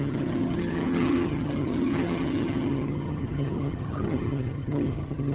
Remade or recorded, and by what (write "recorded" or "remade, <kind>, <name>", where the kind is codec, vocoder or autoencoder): remade, vocoder, HiFi-GAN